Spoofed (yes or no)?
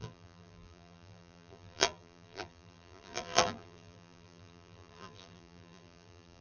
yes